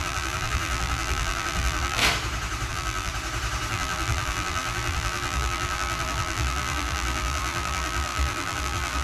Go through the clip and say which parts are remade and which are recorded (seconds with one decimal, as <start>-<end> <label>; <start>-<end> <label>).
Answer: 0.0-2.0 remade; 2.0-2.7 recorded; 2.7-3.1 remade; 3.1-3.7 recorded; 3.7-9.0 remade